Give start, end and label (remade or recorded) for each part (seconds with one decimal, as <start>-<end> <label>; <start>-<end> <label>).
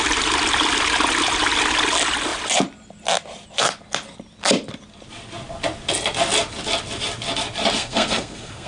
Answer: 0.0-7.8 recorded; 7.8-8.7 remade